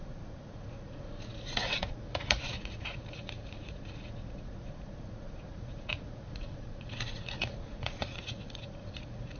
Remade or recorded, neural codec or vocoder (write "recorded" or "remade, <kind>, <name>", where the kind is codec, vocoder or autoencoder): remade, vocoder, Vocos